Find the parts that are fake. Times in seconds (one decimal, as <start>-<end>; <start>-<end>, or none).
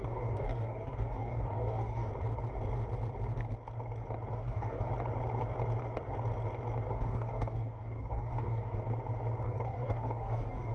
0.0-2.1; 4.3-4.9; 6.9-8.8; 9.4-10.7